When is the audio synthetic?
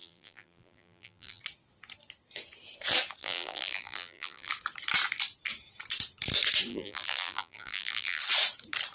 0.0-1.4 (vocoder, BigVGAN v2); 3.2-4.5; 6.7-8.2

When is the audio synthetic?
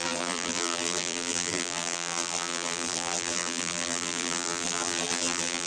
0.0-5.7 (vocoder, BigVGAN v2)